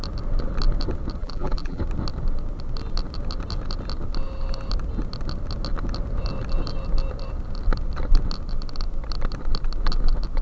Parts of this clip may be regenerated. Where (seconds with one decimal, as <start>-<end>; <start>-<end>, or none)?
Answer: 1.2-1.8